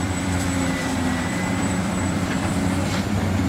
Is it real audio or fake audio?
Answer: fake